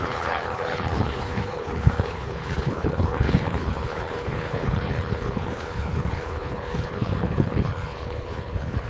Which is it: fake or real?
fake